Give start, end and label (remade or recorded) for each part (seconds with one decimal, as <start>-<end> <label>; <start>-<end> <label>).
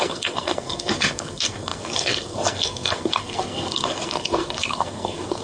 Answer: 0.0-5.4 remade